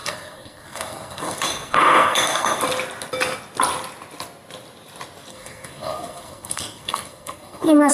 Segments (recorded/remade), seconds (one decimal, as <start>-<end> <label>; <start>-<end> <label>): 0.0-2.6 remade; 2.6-5.3 recorded; 5.3-7.9 remade